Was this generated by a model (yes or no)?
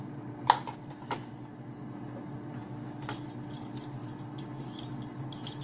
no